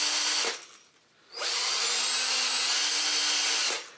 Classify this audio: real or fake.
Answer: real